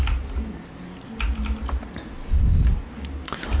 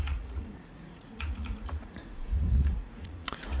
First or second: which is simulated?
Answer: second